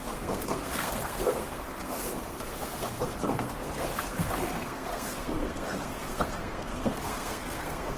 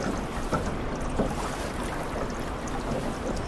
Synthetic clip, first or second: first